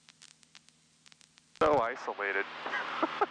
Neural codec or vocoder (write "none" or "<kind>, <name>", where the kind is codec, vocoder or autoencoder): none